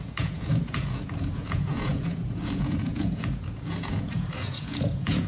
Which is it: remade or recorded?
remade